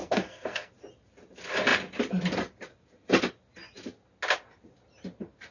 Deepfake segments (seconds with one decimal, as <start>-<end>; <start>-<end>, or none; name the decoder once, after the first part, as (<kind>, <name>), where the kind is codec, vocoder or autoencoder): 0.0-0.7 (codec, SNAC)